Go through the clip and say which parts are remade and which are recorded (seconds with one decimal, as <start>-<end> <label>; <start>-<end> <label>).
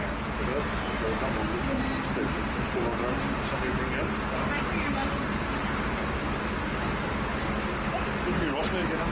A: 0.0-9.1 recorded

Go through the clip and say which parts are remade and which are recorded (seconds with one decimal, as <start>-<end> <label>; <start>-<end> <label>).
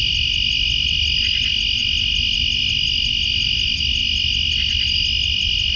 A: 0.0-5.8 recorded